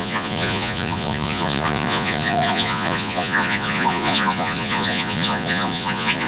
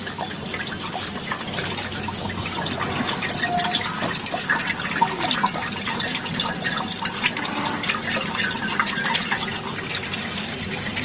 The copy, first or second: first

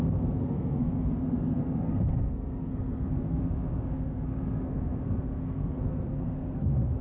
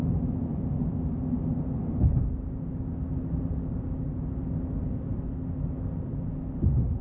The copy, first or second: first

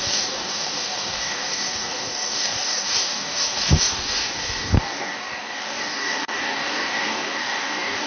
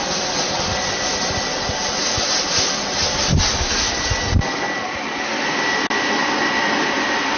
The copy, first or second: first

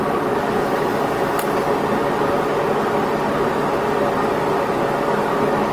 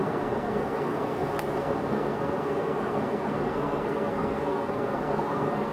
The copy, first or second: second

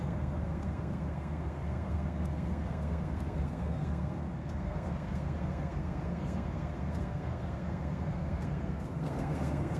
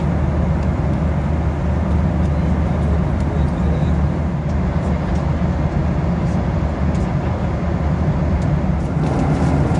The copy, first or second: first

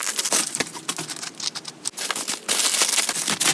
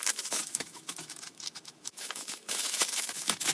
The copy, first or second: second